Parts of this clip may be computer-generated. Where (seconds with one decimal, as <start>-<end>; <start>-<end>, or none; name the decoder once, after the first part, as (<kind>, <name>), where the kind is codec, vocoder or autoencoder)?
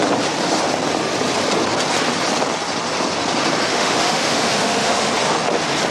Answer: 3.7-5.1 (autoencoder, DAC-VAE)